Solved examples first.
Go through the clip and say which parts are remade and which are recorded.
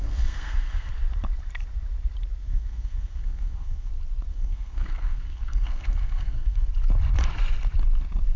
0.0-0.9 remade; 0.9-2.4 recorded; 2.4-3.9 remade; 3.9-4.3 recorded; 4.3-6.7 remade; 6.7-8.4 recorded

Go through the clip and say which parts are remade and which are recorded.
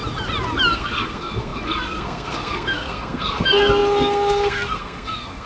0.0-0.7 recorded; 0.7-5.5 remade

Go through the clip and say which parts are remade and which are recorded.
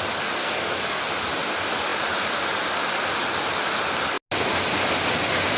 0.0-0.4 recorded; 0.4-1.0 remade; 1.0-5.6 recorded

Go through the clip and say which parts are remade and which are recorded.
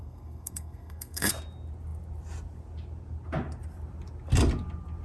0.0-1.3 remade; 1.3-5.0 recorded